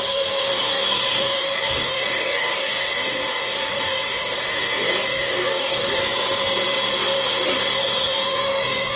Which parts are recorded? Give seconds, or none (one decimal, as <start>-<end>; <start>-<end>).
6.0-7.8